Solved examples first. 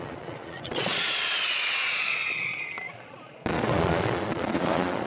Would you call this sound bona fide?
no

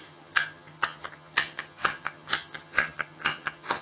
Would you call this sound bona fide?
no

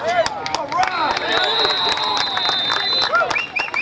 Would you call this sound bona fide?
yes